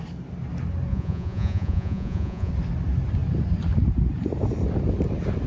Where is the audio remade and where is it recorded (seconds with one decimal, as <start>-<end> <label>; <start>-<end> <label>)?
0.0-0.9 recorded; 0.9-2.5 remade; 2.5-5.5 recorded